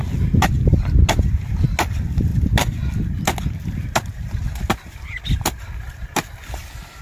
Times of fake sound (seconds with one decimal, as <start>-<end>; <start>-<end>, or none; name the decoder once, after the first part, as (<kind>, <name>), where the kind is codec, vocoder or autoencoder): none